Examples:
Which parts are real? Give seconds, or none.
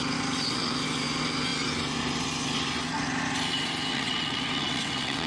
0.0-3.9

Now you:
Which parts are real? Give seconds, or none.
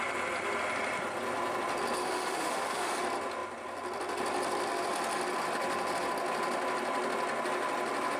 0.0-2.0; 2.9-8.2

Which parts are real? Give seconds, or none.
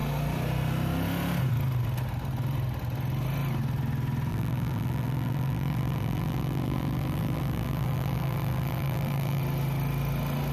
0.0-4.3; 9.4-10.5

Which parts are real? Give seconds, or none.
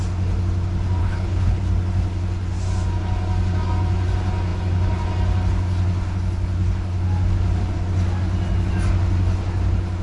0.0-1.0; 1.6-10.0